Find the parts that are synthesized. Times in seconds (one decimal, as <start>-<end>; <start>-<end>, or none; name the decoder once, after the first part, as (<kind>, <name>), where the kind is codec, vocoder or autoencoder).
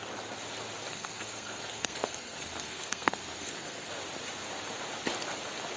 0.9-3.9 (codec, SNAC)